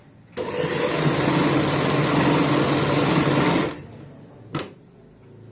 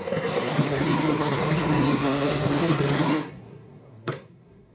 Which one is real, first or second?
first